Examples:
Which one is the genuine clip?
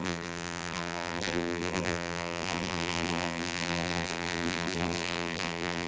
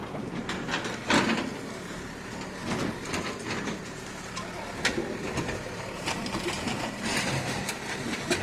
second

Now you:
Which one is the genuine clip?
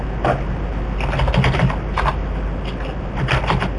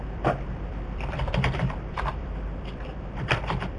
first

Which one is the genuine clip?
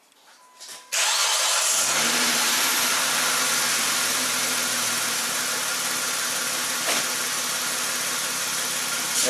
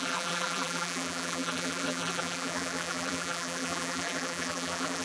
first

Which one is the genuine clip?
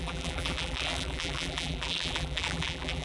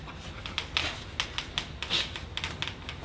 second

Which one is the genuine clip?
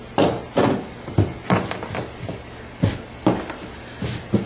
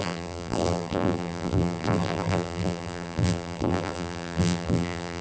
first